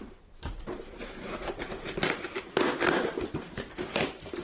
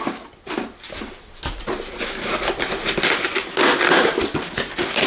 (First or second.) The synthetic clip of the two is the first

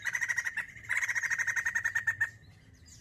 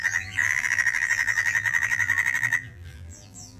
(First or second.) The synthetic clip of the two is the second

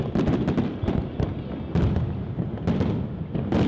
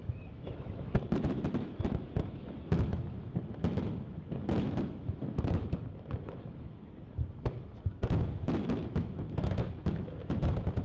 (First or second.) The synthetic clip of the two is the second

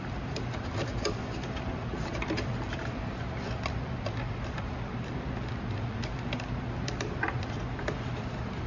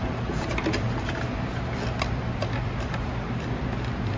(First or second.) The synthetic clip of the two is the first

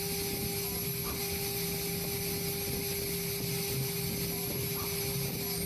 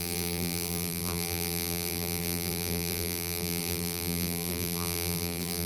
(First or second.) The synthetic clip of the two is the second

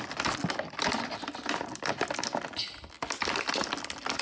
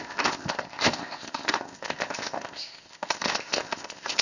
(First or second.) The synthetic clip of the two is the second